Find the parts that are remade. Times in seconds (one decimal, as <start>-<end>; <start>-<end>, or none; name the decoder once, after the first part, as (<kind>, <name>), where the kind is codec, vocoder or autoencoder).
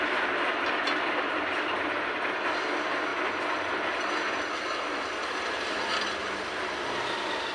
0.0-3.1 (vocoder, BigVGAN v2); 5.7-7.5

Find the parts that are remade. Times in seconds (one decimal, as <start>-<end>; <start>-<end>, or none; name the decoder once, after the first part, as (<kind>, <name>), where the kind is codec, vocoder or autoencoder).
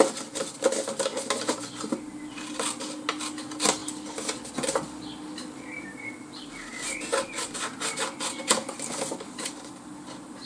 none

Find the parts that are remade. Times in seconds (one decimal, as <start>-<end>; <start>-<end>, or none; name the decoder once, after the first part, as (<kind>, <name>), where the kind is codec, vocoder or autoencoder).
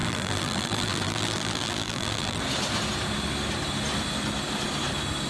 0.0-2.4 (vocoder, BigVGAN v2)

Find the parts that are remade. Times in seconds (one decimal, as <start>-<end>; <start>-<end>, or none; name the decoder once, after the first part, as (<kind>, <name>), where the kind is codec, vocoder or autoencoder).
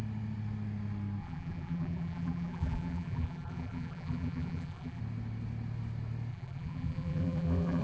1.2-5.0 (vocoder, BigVGAN v2); 6.3-7.8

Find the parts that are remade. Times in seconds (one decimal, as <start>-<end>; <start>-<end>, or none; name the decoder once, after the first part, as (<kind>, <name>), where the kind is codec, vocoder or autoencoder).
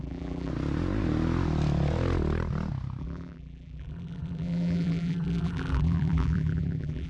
0.0-0.5 (vocoder, BigVGAN v2); 3.0-7.1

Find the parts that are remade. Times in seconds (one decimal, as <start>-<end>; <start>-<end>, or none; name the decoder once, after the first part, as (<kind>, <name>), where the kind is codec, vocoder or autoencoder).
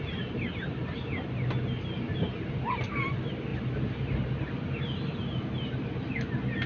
none